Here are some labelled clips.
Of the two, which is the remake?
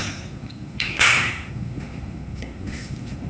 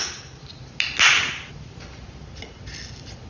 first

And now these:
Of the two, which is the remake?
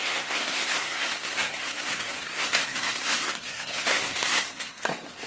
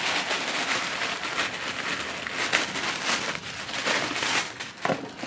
first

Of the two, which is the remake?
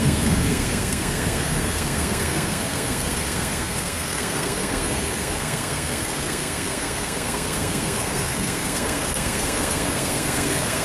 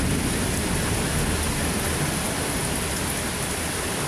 first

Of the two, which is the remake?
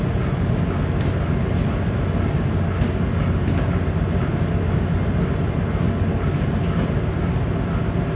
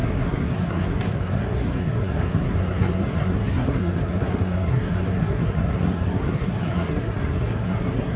second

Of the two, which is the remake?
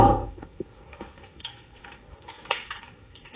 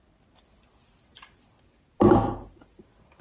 first